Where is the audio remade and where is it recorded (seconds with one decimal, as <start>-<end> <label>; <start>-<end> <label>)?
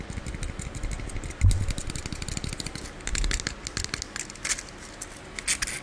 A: 0.0-5.8 recorded